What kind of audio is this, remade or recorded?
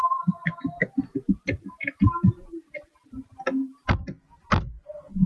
recorded